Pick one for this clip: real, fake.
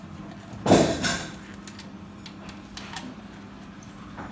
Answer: real